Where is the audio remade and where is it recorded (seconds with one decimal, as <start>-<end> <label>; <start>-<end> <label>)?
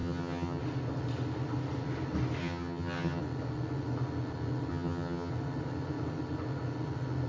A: 0.0-0.6 remade; 0.6-2.4 recorded; 2.4-3.2 remade; 3.2-4.7 recorded; 4.7-5.3 remade; 5.3-7.3 recorded